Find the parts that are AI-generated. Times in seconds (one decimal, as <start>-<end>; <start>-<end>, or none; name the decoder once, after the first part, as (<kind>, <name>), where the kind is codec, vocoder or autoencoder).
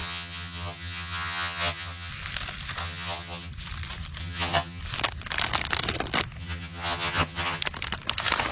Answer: 0.0-2.1 (vocoder, HiFi-GAN); 2.8-3.5; 4.2-4.8; 6.4-7.6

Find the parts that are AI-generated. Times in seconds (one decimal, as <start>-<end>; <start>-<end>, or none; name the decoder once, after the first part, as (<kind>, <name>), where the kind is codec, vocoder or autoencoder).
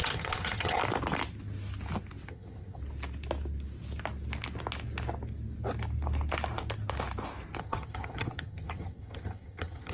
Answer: 0.0-0.8 (vocoder, HiFi-GAN); 2.3-2.8; 7.6-9.9